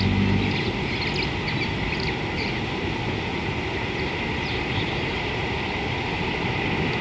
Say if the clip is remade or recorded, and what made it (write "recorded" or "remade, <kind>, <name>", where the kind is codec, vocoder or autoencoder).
recorded